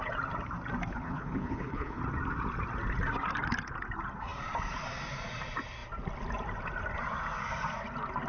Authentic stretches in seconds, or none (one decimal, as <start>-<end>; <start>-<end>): 0.0-0.9; 2.0-8.3